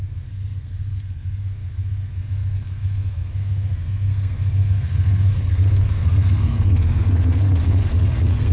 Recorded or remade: remade